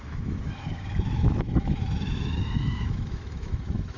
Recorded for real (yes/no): no